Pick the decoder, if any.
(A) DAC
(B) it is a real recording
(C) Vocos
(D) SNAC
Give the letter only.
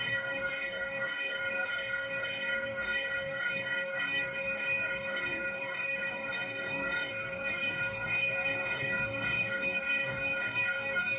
A